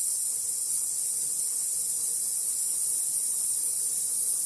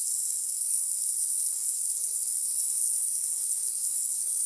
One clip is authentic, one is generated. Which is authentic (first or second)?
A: first